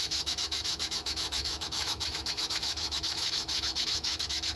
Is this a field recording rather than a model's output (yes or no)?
no